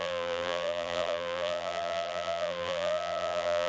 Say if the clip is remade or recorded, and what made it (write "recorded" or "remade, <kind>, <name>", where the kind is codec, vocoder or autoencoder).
remade, vocoder, BigVGAN v2